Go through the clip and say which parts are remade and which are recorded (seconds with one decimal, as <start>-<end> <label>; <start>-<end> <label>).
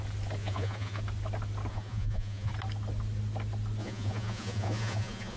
0.0-0.4 recorded; 0.4-1.0 remade; 1.0-1.7 recorded; 1.7-2.5 remade; 2.5-3.8 recorded; 3.8-5.4 remade